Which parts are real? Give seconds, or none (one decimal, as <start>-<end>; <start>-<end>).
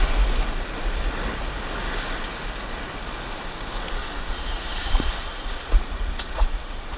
0.0-4.0